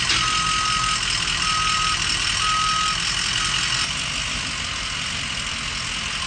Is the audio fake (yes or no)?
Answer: no